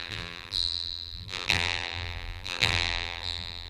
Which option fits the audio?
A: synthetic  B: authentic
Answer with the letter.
A